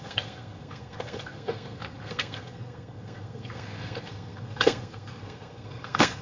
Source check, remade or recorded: remade